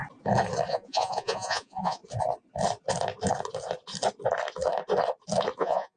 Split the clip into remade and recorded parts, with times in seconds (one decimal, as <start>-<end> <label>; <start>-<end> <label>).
0.0-0.7 recorded; 0.7-2.0 remade; 2.0-5.6 recorded; 5.6-6.0 remade

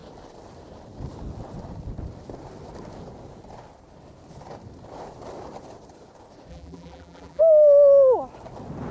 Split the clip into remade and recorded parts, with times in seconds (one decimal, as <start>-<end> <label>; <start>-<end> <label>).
0.0-6.5 recorded; 6.5-7.4 remade; 7.4-8.9 recorded